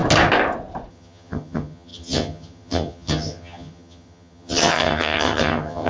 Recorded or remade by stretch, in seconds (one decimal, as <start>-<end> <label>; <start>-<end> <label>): 0.0-0.9 recorded; 0.9-5.9 remade